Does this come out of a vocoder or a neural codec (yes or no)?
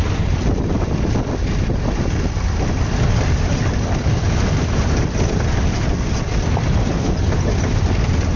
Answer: no